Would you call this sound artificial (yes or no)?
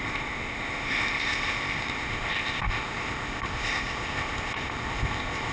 yes